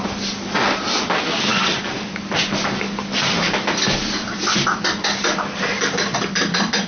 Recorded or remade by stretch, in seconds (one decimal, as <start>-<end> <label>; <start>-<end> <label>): 0.0-6.9 recorded